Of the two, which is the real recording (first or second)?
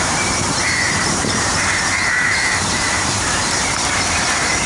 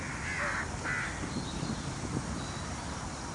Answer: second